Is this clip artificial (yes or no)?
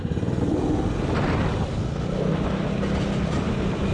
no